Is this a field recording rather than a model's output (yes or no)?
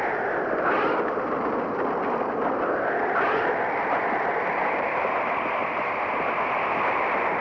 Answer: yes